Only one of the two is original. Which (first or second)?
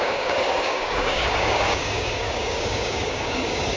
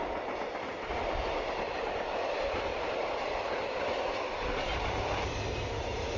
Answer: second